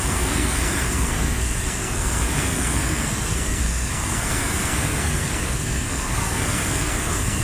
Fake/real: fake